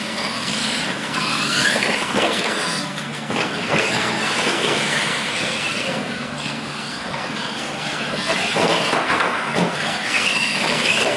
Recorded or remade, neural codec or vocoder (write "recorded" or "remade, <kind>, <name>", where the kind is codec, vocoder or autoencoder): remade, codec, SNAC